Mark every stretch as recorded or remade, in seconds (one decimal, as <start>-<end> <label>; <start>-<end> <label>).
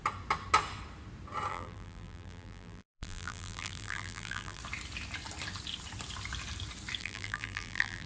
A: 0.0-1.5 recorded; 1.5-4.6 remade; 4.6-7.0 recorded; 7.0-8.1 remade